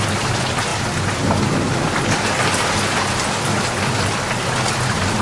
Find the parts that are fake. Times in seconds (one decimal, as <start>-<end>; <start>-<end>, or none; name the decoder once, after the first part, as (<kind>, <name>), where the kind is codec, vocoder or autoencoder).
none